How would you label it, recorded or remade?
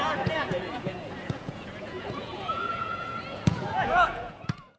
remade